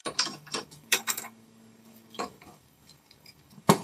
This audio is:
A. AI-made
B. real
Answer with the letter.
A